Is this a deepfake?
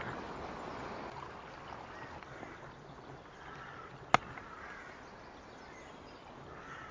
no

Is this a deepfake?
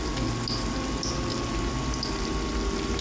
no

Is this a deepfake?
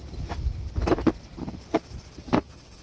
yes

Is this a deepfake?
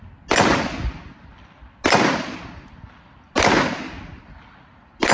no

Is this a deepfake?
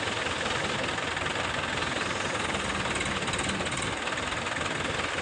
no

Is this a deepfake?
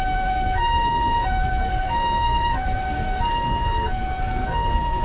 yes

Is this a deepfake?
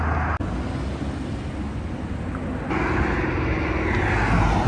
no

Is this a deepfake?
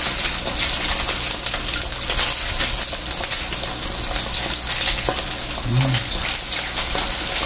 no